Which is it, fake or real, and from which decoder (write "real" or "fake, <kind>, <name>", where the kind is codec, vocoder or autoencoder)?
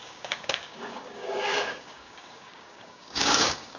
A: fake, codec, DAC